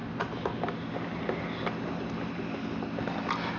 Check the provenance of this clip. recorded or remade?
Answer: recorded